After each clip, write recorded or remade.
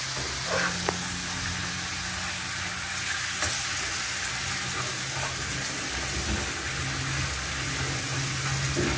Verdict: recorded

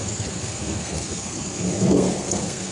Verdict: remade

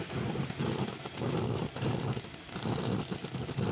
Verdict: recorded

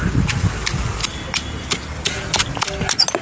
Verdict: recorded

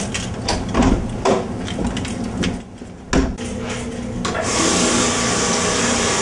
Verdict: recorded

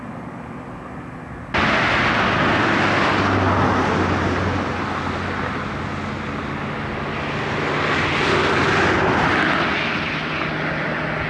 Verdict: recorded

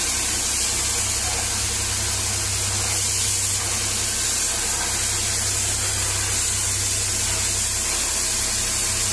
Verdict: recorded